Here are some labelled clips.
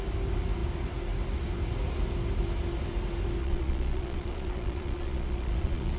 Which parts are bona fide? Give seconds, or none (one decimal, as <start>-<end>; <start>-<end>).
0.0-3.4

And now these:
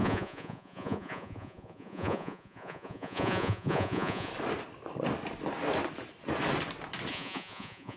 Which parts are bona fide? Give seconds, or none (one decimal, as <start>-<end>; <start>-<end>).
4.3-7.1

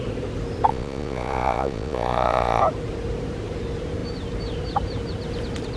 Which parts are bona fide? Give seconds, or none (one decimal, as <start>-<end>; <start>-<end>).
0.0-0.7; 2.6-5.8

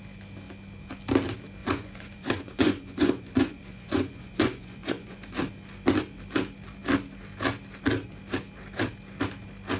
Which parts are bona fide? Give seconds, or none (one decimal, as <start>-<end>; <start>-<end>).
0.0-1.6; 5.4-9.8

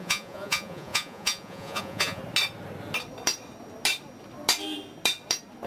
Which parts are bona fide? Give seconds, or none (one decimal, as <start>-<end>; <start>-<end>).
2.2-5.7